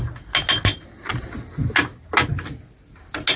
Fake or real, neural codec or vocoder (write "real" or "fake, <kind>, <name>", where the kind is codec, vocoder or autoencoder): real